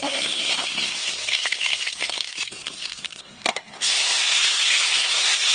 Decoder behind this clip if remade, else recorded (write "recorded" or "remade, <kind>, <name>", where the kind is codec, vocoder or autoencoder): remade, codec, SNAC